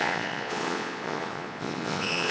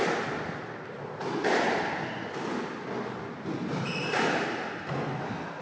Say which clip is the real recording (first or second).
second